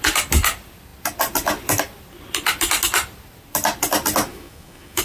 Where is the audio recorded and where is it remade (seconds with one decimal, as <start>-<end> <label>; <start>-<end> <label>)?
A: 0.0-4.3 recorded; 4.3-5.0 remade